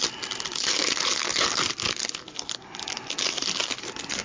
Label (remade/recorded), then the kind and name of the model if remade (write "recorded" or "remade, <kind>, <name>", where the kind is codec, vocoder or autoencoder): recorded